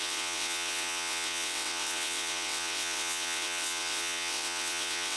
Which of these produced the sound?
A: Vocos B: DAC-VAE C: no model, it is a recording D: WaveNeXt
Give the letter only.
D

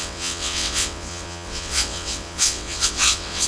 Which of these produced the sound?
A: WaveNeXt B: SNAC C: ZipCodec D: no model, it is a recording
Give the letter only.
A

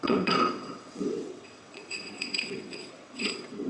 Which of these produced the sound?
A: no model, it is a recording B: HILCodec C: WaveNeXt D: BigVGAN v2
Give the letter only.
C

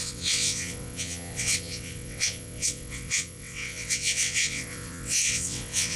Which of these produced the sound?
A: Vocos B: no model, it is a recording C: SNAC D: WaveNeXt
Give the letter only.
D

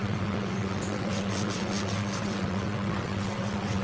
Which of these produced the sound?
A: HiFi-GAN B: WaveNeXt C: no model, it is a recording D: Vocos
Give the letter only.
B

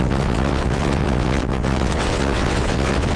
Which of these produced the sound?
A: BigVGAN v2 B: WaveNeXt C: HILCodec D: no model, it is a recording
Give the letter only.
B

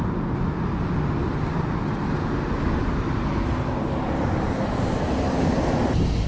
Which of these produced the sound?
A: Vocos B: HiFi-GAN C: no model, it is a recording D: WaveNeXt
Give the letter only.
C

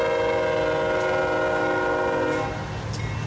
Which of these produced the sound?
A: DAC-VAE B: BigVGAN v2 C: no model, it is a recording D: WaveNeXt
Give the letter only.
C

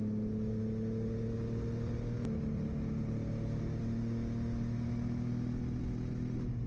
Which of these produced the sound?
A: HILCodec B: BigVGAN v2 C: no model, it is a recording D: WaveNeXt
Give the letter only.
C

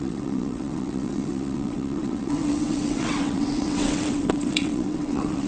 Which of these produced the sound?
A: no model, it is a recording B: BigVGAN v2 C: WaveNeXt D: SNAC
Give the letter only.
C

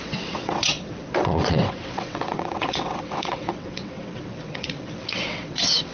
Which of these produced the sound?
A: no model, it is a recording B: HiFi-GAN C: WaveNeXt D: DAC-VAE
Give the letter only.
C